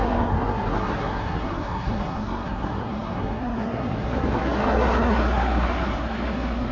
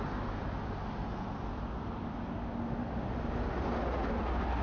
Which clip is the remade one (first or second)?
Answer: first